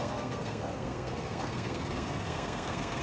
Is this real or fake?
fake